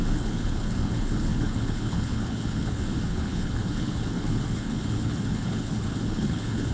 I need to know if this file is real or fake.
fake